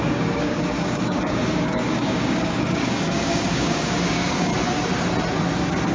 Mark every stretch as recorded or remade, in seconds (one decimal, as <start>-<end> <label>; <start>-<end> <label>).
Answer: 0.0-4.5 remade; 4.5-5.9 recorded